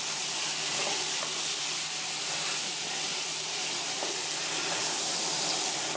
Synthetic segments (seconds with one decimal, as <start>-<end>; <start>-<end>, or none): 0.0-6.0